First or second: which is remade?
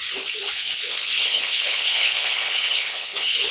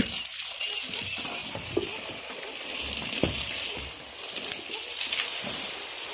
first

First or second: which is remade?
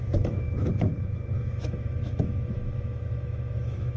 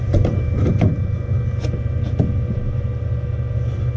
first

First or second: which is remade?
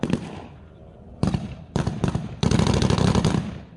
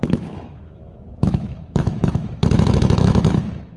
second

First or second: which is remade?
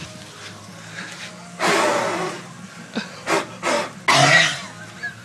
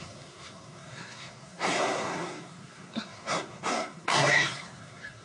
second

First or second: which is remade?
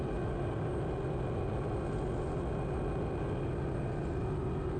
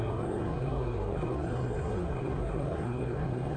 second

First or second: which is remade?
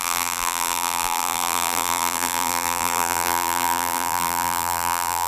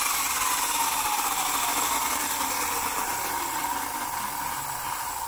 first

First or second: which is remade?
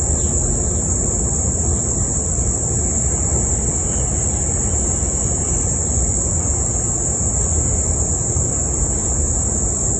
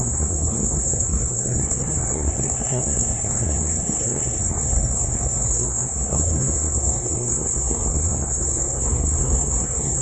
second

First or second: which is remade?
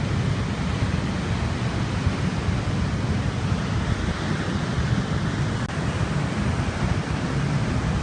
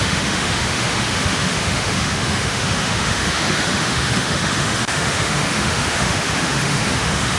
second